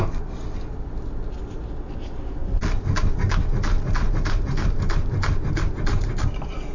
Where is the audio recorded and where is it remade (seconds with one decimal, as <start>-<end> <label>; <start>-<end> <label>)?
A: 0.0-6.7 recorded